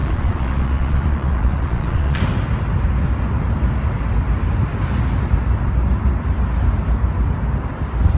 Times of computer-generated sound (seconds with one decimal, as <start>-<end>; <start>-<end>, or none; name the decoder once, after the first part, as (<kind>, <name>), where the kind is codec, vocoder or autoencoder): 0.0-2.2 (vocoder, Vocos)